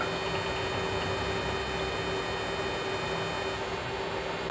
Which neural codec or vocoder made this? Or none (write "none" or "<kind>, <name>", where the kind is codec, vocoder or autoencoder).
none